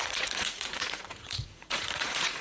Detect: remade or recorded remade